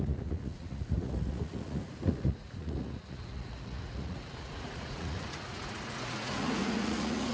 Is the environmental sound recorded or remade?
remade